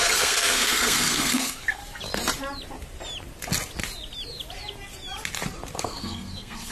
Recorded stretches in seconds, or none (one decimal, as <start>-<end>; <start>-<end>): 1.8-5.8